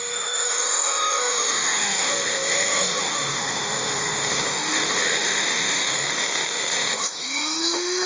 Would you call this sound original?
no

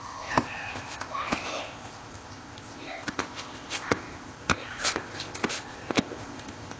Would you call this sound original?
no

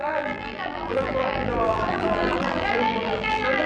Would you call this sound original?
no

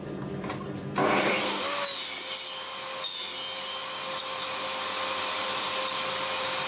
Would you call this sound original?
yes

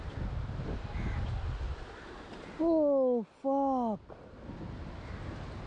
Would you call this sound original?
yes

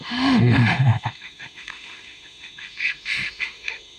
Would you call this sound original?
no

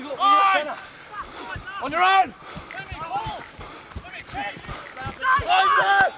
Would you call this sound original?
yes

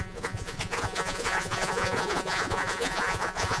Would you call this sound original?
no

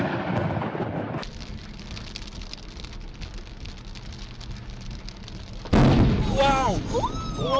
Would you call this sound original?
yes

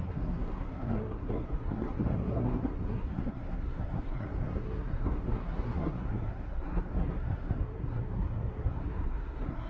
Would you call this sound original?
no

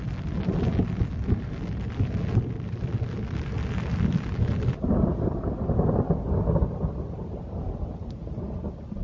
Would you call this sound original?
yes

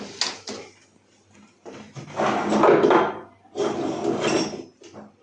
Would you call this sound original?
yes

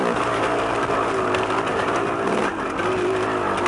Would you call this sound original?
yes